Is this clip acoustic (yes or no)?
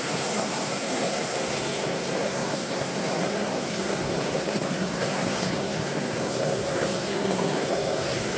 no